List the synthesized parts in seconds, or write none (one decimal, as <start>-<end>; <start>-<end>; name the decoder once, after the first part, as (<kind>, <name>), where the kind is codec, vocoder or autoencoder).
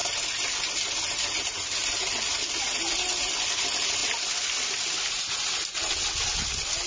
none